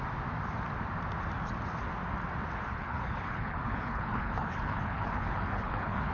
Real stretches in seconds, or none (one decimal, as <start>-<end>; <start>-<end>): 0.0-2.7